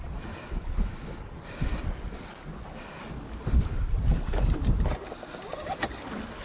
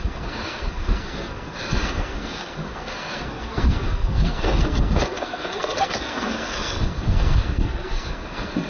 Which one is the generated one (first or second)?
second